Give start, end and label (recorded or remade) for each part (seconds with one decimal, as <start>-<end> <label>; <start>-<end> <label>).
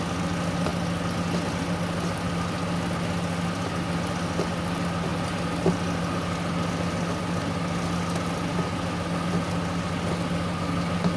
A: 0.0-11.2 recorded